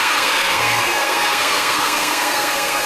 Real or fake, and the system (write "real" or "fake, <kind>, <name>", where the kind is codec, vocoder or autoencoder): fake, codec, SNAC